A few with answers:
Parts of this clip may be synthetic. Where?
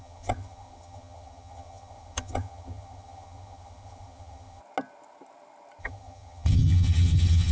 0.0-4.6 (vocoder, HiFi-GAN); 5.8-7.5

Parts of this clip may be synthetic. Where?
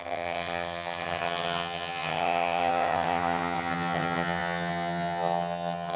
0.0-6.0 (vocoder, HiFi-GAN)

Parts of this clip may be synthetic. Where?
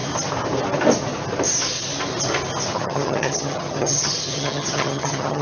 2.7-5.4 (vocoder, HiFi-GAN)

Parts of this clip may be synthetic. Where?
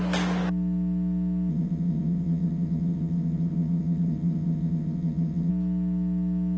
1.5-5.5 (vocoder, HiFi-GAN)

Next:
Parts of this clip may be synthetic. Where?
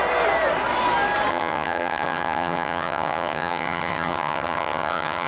1.3-5.3 (vocoder, HiFi-GAN)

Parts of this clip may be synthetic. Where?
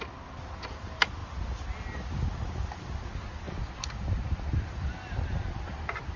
none